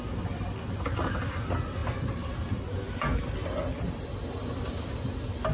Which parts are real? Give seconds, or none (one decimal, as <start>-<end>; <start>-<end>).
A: 0.0-5.5